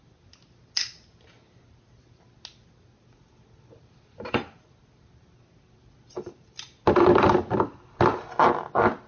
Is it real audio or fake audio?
real